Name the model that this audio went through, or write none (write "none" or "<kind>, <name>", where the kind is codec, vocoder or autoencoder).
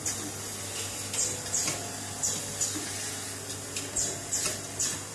none